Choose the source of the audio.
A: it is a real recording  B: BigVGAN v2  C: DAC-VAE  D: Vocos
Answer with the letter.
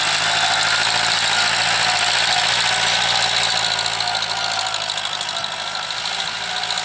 A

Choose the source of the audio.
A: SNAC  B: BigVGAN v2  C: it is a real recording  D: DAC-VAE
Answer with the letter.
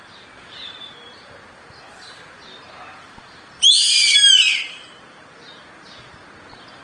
B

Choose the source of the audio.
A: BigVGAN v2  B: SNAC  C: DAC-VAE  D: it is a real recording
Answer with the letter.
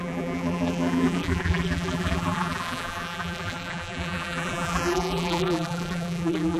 A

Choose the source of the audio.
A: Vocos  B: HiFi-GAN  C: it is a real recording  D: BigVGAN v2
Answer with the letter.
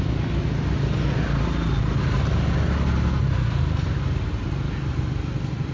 C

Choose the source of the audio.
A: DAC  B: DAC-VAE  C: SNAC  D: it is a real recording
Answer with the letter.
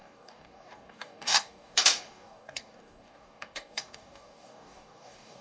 A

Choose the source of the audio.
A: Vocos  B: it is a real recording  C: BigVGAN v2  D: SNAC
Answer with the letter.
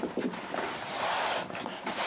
C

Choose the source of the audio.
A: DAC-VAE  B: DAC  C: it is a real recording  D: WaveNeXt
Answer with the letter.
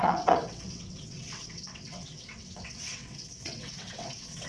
D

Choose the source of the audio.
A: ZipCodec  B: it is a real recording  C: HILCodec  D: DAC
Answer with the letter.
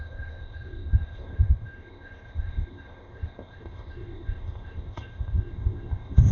A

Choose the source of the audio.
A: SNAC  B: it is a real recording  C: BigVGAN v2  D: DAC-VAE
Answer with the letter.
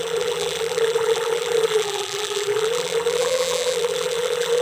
C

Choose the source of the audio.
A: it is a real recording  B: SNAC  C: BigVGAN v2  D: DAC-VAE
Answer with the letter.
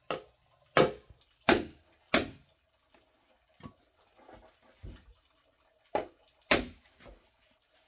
A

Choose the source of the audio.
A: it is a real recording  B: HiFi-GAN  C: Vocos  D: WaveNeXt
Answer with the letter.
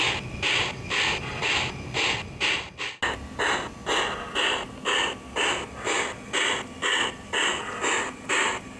A